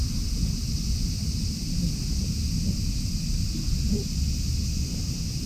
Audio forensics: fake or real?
real